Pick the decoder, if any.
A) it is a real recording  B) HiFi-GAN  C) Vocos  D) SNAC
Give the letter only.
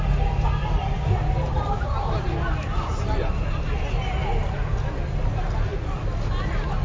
A